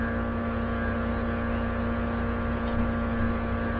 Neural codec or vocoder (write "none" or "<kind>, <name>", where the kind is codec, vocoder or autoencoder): none